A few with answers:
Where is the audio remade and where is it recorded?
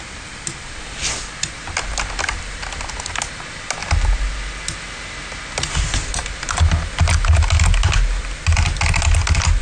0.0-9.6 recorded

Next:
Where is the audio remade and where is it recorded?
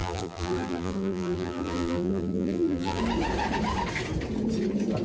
0.0-3.0 remade; 3.0-5.0 recorded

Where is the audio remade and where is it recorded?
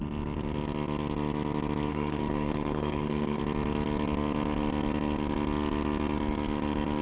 0.0-1.9 recorded; 1.9-3.4 remade; 3.4-7.0 recorded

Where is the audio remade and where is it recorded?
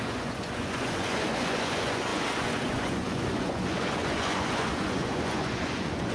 0.0-6.1 remade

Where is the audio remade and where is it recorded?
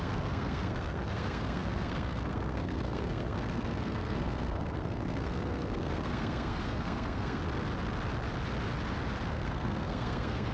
0.0-7.4 remade; 7.4-9.3 recorded; 9.3-10.5 remade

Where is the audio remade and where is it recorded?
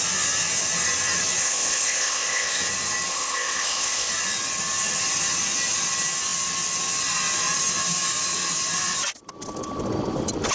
0.0-1.4 recorded; 1.4-2.6 remade; 2.6-3.1 recorded; 3.1-4.1 remade; 4.1-10.5 recorded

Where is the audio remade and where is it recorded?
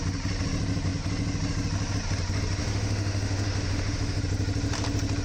0.0-2.6 recorded; 2.6-4.2 remade; 4.2-5.2 recorded